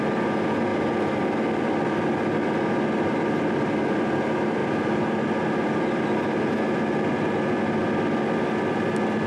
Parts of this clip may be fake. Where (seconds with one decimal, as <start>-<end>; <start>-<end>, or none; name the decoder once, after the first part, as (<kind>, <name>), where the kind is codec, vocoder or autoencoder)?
none